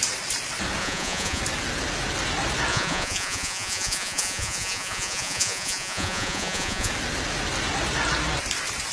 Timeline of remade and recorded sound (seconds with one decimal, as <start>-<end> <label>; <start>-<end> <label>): 0.0-0.8 recorded; 0.8-1.4 remade; 1.4-2.7 recorded; 2.7-6.9 remade; 6.9-8.9 recorded